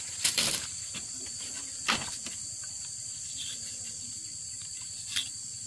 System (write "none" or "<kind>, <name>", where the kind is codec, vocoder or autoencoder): vocoder, BigVGAN v2